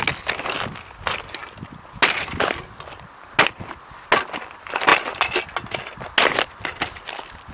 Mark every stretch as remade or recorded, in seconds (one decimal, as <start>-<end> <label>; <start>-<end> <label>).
0.0-7.5 recorded